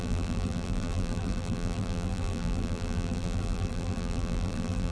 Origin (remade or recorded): remade